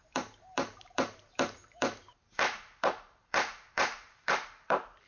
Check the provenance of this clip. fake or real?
fake